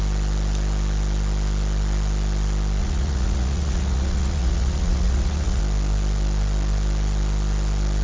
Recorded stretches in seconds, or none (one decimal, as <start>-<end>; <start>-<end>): 0.0-2.8; 5.6-8.0